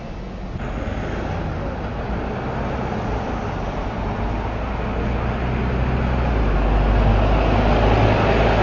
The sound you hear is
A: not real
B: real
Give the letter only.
B